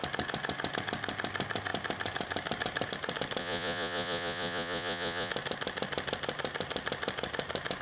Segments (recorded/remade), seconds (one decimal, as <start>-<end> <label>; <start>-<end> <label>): 0.0-3.4 recorded; 3.4-5.3 remade; 5.3-7.8 recorded